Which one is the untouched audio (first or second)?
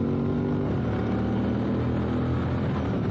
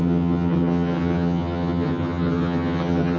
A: first